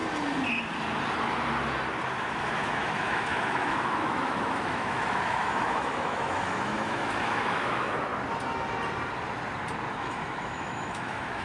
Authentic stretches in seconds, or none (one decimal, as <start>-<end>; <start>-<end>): 0.0-2.4; 8.1-9.9